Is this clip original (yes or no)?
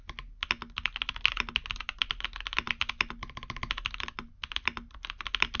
yes